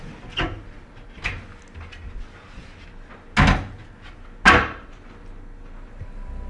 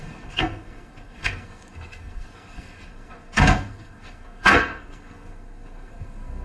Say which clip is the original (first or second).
first